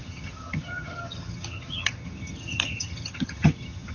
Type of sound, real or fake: fake